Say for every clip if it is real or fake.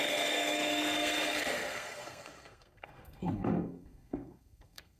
fake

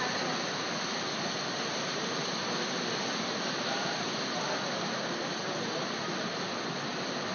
real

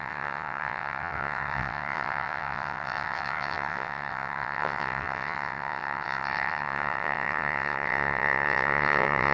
fake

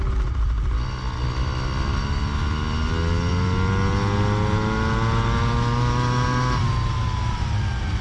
real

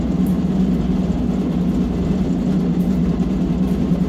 real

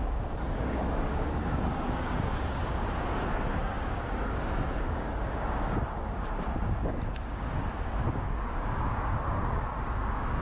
fake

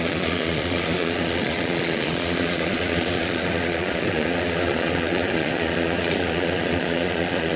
fake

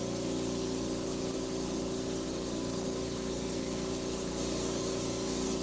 fake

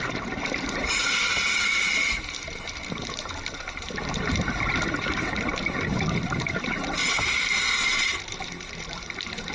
fake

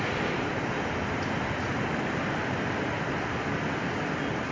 real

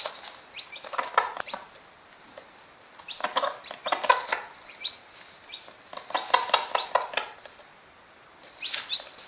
real